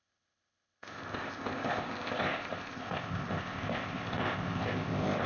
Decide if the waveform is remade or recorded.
remade